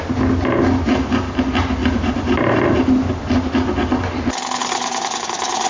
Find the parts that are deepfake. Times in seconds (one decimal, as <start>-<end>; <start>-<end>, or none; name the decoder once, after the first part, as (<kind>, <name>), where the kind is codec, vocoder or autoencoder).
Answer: 1.8-3.2 (vocoder, BigVGAN v2)